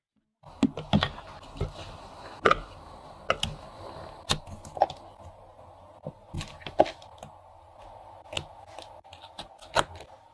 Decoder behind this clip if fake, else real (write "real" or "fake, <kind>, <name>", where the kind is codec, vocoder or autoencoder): real